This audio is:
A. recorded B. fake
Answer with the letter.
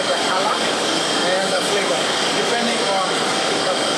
B